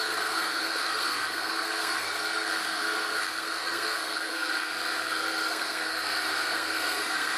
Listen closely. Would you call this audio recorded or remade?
remade